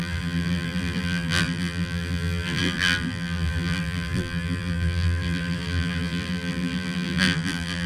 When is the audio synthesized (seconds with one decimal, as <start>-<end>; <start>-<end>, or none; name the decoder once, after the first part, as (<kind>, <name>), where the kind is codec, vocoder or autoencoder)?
0.0-7.9 (vocoder, BigVGAN v2)